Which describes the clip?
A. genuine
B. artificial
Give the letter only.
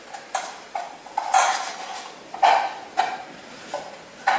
B